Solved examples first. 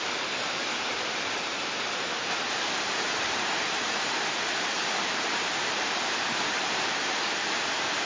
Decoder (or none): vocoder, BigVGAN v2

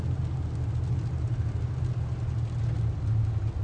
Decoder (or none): none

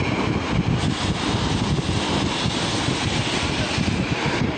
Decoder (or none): none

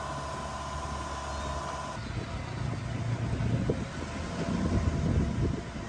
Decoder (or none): none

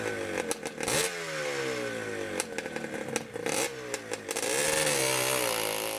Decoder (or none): none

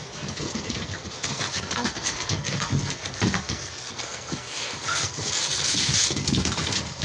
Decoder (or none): codec, SNAC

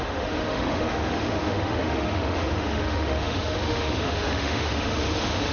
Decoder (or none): autoencoder, DAC-VAE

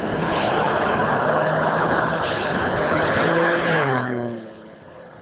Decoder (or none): codec, HILCodec